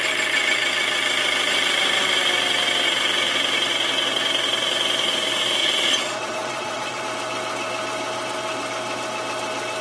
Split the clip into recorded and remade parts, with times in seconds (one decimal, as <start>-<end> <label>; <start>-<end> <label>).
0.0-5.6 recorded; 5.6-7.0 remade; 7.0-9.8 recorded